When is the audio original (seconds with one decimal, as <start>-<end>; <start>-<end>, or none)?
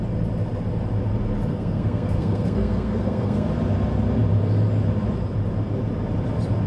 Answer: 0.0-1.5; 3.5-6.7